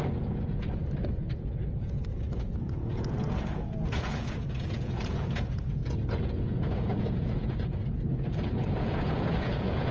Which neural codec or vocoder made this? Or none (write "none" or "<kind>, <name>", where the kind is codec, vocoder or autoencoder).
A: vocoder, Vocos